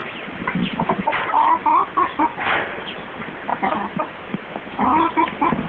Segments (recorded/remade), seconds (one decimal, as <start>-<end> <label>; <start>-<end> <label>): 0.0-3.5 recorded; 3.5-5.1 remade; 5.1-5.7 recorded

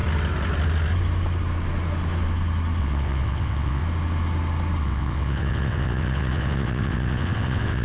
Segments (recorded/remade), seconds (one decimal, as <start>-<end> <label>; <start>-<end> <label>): 0.0-2.8 recorded; 2.8-3.8 remade; 3.8-4.8 recorded; 4.8-7.8 remade

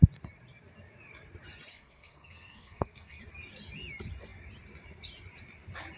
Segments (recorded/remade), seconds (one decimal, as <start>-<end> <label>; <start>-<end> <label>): 0.0-1.7 recorded; 1.7-3.2 remade; 3.2-6.0 recorded

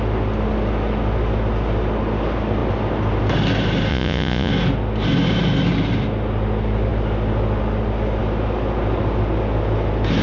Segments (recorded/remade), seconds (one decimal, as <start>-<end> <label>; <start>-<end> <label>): 0.0-3.9 recorded; 3.9-4.5 remade; 4.5-10.2 recorded

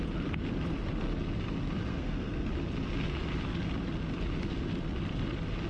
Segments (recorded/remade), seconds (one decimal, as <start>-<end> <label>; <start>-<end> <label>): 0.0-1.9 recorded; 1.9-2.5 remade; 2.5-5.7 recorded